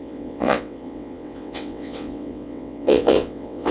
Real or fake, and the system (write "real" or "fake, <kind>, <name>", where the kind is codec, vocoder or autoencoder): fake, vocoder, WaveNeXt